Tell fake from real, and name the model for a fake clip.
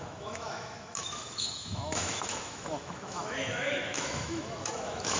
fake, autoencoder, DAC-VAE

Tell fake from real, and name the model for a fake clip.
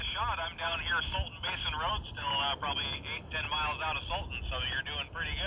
real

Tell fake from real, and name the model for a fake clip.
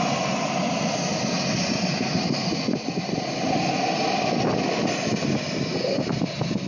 real